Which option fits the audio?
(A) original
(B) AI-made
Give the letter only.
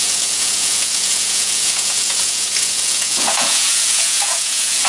B